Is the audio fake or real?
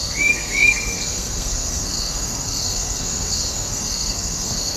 fake